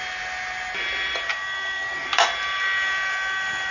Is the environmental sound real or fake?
real